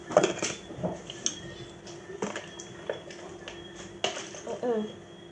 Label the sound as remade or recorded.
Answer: recorded